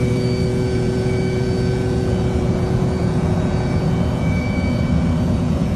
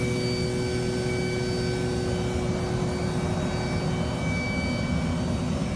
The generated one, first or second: first